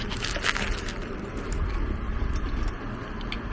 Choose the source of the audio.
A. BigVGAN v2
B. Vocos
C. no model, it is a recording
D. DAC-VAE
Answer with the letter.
C